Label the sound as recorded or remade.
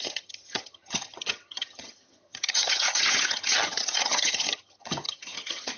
remade